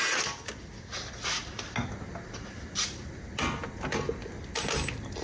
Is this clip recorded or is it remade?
recorded